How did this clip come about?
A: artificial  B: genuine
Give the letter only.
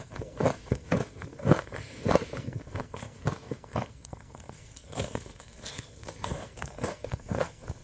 A